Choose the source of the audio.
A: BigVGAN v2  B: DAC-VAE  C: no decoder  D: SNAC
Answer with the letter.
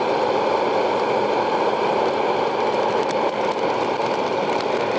C